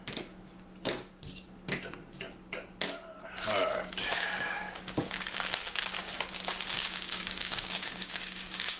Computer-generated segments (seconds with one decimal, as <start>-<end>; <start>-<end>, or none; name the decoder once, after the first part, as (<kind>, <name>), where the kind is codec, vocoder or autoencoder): 4.1-8.8 (codec, DAC)